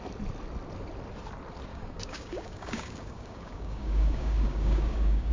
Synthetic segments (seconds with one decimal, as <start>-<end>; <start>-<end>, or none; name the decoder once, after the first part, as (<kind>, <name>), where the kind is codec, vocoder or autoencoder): 1.7-5.3 (codec, DAC)